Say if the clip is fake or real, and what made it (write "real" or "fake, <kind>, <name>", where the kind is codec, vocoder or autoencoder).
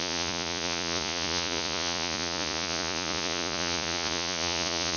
fake, vocoder, Vocos